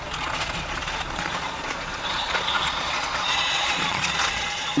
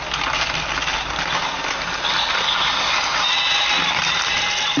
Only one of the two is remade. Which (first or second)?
first